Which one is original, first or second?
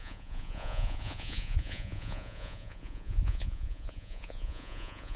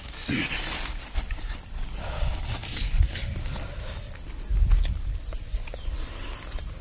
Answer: second